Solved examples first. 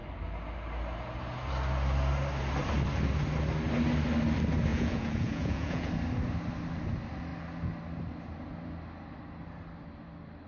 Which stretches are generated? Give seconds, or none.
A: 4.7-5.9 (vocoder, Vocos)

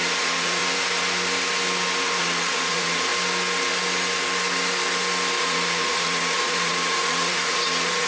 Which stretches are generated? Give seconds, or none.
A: 0.0-0.6 (vocoder, Vocos); 2.2-3.1; 5.4-8.1

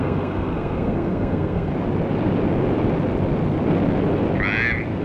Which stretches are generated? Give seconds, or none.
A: 0.0-1.7 (codec, SNAC)

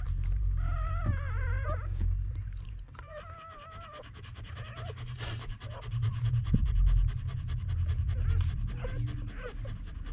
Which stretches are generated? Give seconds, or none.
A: 0.0-10.1 (vocoder, BigVGAN v2)

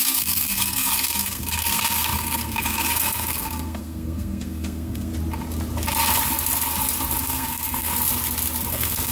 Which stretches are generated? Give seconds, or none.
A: 0.0-5.1 (codec, SNAC); 7.2-7.9; 8.7-9.1

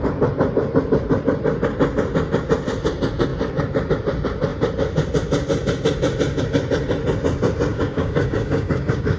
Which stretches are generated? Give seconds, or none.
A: 7.7-9.2 (codec, DAC)